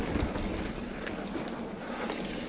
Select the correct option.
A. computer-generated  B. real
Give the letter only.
B